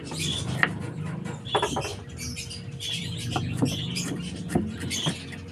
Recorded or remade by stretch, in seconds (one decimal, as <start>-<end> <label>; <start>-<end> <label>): 0.0-5.5 remade